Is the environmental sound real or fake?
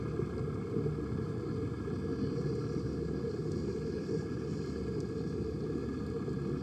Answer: real